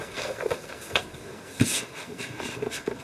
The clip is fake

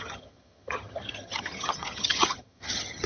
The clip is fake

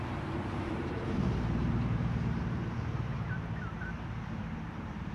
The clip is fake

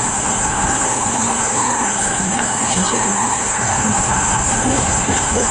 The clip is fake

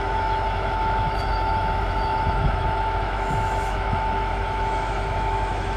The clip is fake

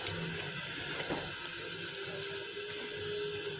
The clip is real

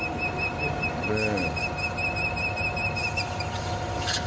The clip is real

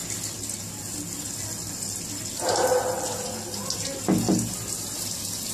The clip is real